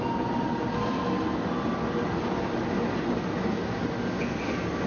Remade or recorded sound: recorded